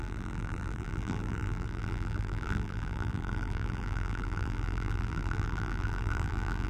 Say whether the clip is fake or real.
fake